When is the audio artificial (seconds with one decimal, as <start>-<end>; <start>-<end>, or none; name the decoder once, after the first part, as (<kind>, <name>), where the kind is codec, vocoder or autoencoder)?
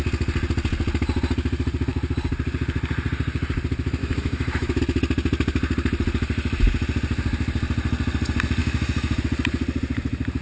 4.0-4.8 (autoencoder, DAC-VAE); 8.6-9.2